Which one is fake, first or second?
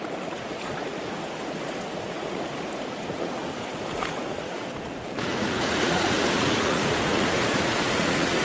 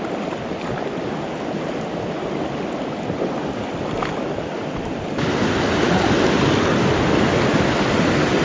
first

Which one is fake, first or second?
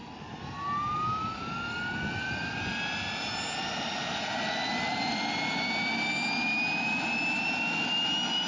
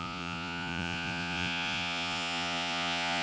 second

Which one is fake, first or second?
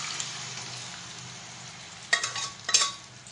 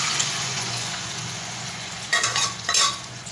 second